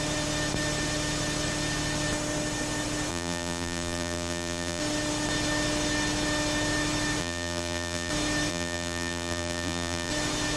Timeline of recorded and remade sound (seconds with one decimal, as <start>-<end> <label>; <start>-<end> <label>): 0.0-3.1 recorded; 3.1-4.8 remade; 4.8-7.2 recorded; 7.2-8.1 remade; 8.1-8.5 recorded; 8.5-10.1 remade; 10.1-10.6 recorded